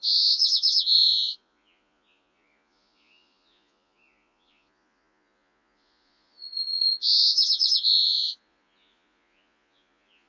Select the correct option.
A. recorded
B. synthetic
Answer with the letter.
B